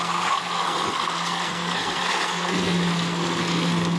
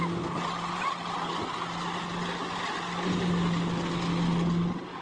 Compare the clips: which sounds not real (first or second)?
first